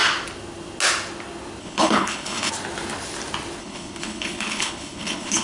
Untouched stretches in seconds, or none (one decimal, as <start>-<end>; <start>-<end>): 0.0-1.6; 2.5-3.6

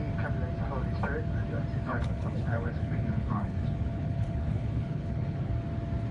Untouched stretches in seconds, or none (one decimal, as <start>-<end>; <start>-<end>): 0.0-1.8; 5.5-6.1

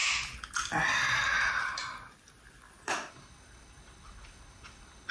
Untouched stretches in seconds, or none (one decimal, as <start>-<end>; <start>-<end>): 0.0-3.1

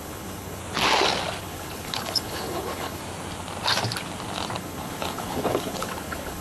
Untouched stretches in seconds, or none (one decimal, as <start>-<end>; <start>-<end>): 0.6-1.4; 3.0-4.6

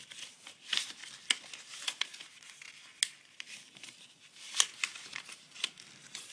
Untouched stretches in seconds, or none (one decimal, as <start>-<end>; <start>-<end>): 0.0-6.3

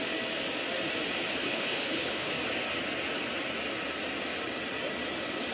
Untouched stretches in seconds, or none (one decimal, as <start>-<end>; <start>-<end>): 0.0-1.3; 2.3-5.5

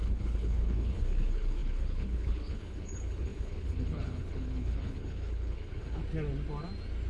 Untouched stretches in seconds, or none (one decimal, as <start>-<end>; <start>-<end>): 6.0-7.1